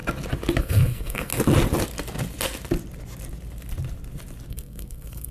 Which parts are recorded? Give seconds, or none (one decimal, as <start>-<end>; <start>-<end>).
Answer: 0.0-0.6; 1.3-4.5